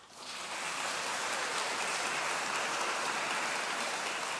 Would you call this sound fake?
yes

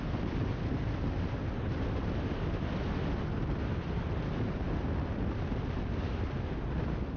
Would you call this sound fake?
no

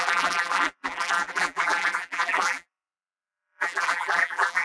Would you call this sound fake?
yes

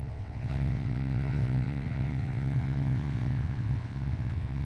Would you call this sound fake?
yes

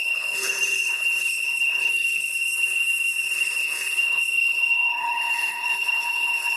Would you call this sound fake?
yes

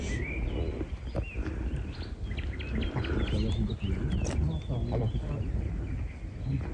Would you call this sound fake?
no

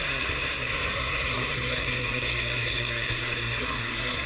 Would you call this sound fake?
yes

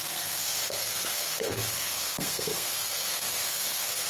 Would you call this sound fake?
yes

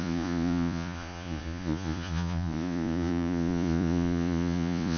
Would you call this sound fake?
yes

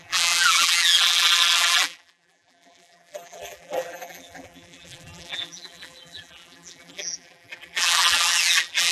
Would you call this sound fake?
yes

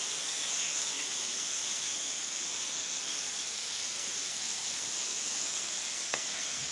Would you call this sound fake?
yes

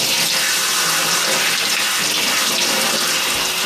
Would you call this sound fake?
no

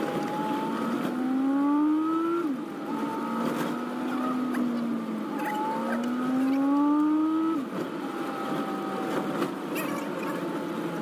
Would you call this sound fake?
no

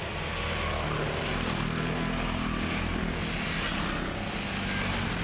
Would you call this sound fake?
no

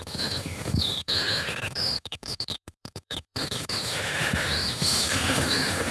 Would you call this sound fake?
yes